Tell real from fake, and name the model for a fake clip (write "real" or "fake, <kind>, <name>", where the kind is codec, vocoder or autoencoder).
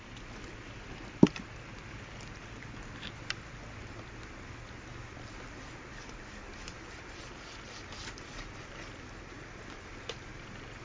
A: real